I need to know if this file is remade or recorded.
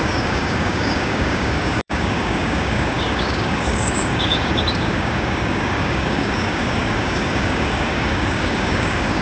remade